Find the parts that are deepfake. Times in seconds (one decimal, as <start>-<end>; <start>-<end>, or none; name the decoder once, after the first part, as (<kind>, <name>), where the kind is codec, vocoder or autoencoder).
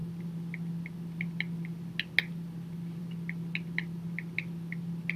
none